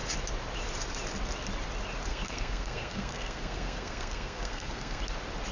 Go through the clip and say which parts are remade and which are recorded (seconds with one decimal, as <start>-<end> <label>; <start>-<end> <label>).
0.0-2.1 recorded; 2.1-5.0 remade; 5.0-5.5 recorded